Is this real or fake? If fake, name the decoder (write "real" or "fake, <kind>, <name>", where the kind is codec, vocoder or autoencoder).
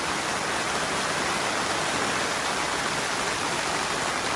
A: real